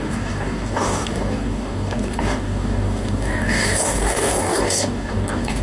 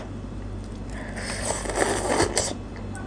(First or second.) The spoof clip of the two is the first